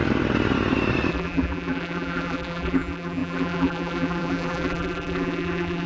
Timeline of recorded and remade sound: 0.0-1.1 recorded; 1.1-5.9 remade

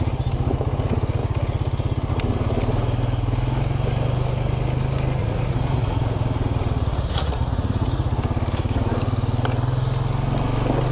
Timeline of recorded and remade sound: 0.0-5.2 recorded; 5.2-7.9 remade; 7.9-10.9 recorded

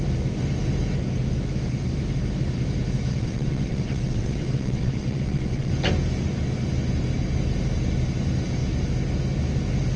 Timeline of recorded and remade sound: 0.0-3.1 recorded; 3.1-5.7 remade; 5.7-10.0 recorded

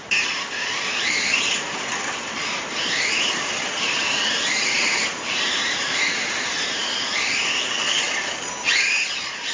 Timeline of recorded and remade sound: 0.0-1.9 remade; 1.9-2.7 recorded; 2.7-7.1 remade; 7.1-8.7 recorded; 8.7-9.5 remade

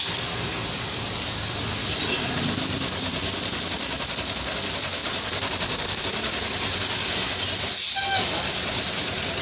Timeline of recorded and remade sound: 0.0-0.6 recorded; 0.6-1.6 remade; 1.6-5.0 recorded; 5.0-6.0 remade; 6.0-9.4 recorded

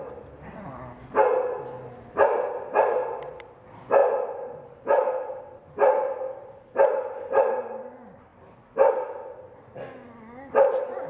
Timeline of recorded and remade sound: 0.0-11.1 recorded

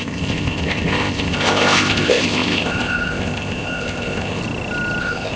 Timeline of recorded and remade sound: 0.0-4.4 remade; 4.4-5.0 recorded; 5.0-5.4 remade